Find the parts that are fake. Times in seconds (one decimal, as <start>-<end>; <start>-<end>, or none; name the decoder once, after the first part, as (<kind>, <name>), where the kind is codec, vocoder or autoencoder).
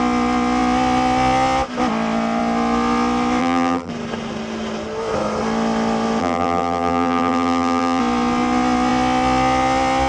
3.4-3.9 (vocoder, BigVGAN v2); 6.2-8.0